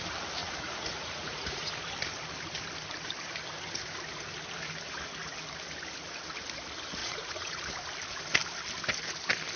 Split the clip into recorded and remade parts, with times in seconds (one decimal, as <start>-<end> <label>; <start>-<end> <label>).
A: 0.0-0.4 recorded; 0.4-1.7 remade; 1.7-7.0 recorded; 7.0-7.6 remade; 7.6-9.6 recorded